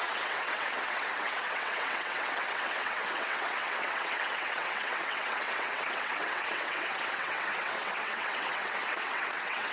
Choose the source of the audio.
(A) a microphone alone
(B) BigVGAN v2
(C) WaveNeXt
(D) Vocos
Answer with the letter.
C